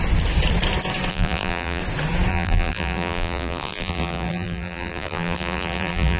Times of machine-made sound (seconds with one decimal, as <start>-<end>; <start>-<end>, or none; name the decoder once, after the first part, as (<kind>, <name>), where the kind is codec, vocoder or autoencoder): 1.1-1.8 (vocoder, BigVGAN v2); 2.3-6.2